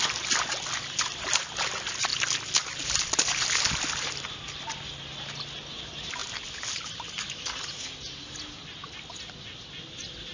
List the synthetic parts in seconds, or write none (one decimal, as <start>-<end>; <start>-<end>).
none